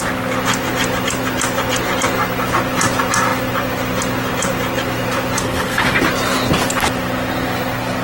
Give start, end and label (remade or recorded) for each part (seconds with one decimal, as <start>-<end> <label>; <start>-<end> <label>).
0.0-5.4 recorded; 5.4-6.0 remade; 6.0-8.0 recorded